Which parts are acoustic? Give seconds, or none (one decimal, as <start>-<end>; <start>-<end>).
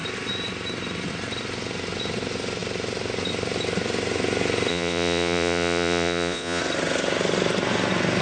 0.0-4.7; 6.6-8.2